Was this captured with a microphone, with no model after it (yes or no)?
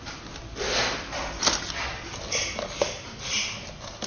yes